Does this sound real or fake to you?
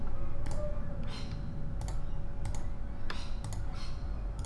real